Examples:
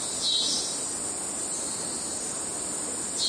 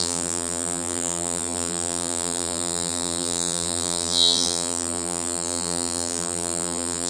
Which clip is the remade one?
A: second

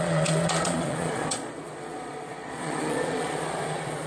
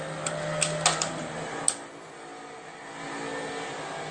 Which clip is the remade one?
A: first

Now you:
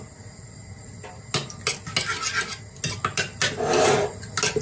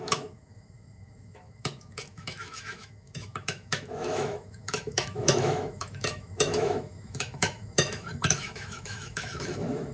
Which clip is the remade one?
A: second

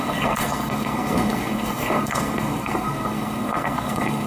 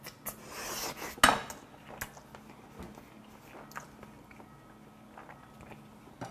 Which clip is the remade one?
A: first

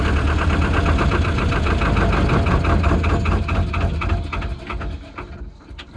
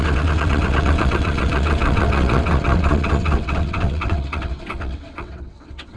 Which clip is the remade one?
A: second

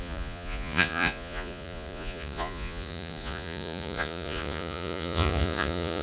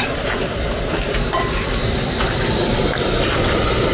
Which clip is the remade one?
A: first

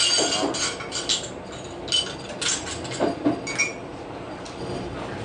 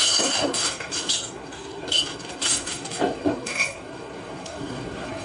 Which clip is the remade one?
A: second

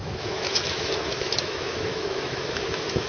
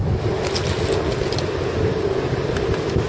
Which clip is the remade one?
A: first